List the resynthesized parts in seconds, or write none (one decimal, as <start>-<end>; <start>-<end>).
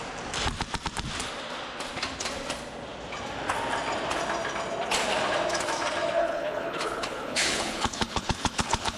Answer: 6.2-9.0